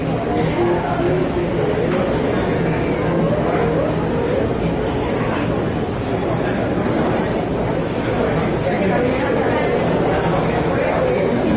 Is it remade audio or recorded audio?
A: recorded